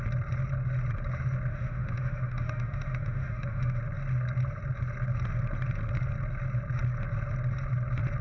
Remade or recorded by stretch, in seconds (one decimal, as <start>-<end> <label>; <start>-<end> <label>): 0.0-1.5 recorded; 1.5-3.8 remade; 3.8-8.2 recorded